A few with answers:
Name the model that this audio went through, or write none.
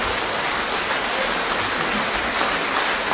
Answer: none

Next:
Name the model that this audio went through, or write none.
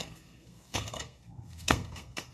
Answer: codec, SNAC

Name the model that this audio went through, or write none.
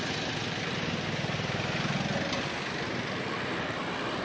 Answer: none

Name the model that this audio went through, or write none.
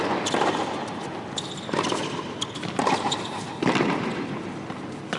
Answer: none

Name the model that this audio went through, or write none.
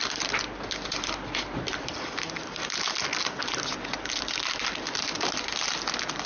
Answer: none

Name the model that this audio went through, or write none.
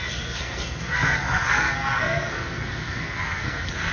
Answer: codec, SNAC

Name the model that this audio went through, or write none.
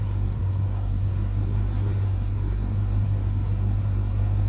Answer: codec, SNAC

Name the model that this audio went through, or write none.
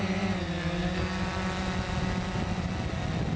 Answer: none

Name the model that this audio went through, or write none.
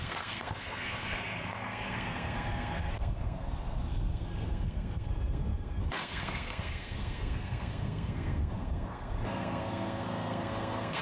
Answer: codec, SNAC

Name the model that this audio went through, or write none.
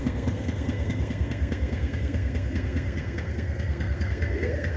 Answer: codec, SNAC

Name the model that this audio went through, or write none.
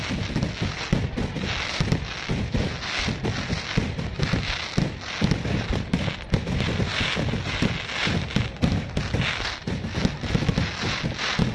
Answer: none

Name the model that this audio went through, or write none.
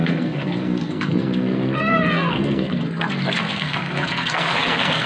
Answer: codec, SNAC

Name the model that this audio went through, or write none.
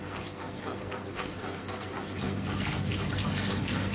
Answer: codec, SNAC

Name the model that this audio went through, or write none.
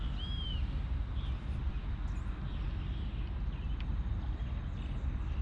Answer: none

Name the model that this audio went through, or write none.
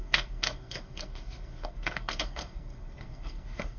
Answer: codec, SNAC